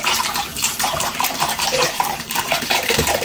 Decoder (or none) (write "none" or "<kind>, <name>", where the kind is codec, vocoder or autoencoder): vocoder, BigVGAN v2